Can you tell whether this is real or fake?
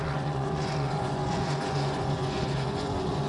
fake